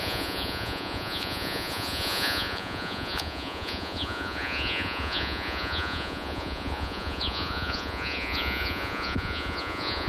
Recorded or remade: remade